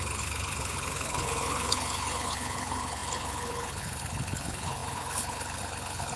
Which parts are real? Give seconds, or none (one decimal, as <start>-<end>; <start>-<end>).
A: none